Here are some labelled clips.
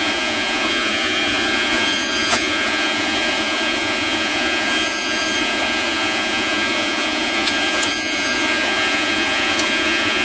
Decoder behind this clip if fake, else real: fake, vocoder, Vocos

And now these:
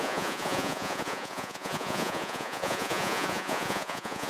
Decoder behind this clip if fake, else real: fake, vocoder, Vocos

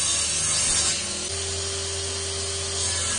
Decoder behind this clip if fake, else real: real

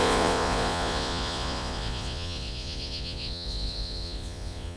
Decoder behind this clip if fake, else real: fake, vocoder, Vocos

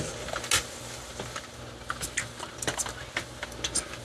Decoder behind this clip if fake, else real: real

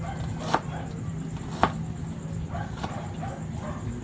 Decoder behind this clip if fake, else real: real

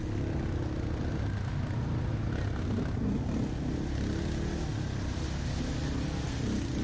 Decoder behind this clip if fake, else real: real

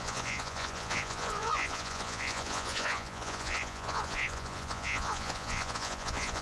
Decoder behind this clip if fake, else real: fake, vocoder, Vocos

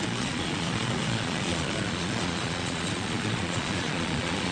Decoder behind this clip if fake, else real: fake, vocoder, Vocos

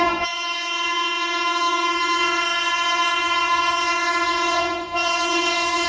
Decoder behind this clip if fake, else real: fake, vocoder, Vocos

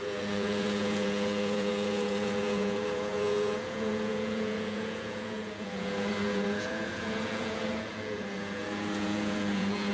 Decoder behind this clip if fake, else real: fake, vocoder, Vocos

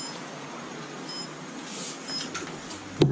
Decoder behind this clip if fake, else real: real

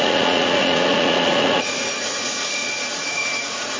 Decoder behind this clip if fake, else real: fake, vocoder, Vocos